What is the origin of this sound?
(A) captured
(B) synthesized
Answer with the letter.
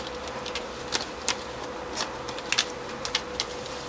A